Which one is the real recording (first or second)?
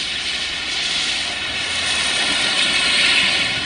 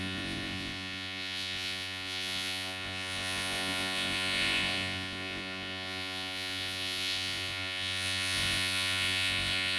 first